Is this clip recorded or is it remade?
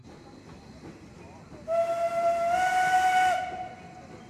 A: recorded